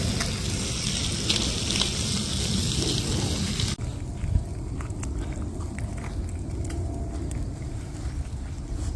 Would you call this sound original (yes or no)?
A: yes